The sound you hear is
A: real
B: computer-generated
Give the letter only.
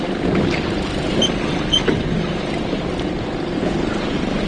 A